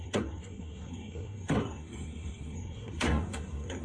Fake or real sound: fake